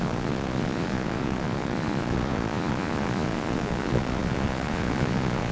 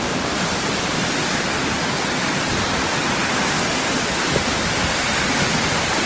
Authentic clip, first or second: second